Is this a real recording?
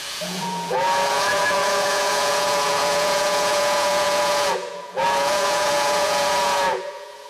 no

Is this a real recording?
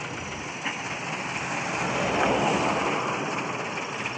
yes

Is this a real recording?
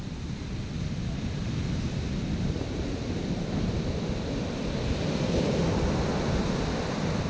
yes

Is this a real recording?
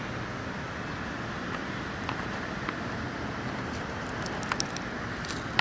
yes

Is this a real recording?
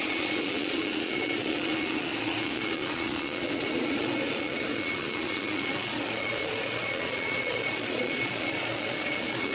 no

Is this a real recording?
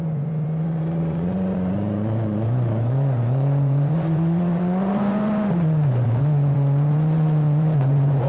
no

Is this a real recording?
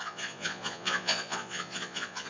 no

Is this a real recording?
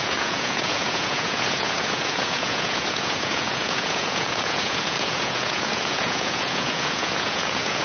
no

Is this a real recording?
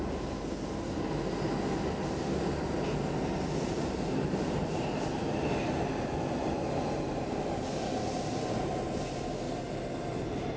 yes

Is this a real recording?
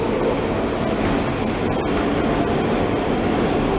yes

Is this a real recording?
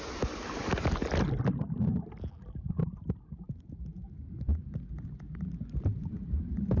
yes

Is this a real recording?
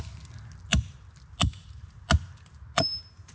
yes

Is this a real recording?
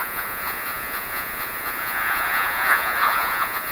no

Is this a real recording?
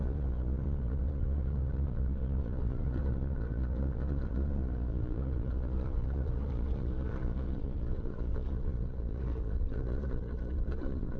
no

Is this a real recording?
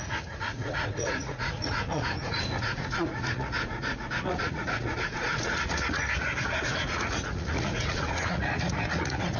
no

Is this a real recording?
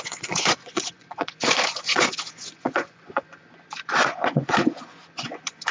no